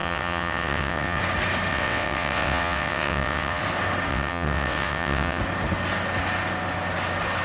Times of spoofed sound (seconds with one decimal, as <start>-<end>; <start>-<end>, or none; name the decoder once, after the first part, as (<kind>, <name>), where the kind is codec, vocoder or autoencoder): 0.0-1.2 (vocoder, WaveNeXt); 1.7-3.6; 4.1-5.4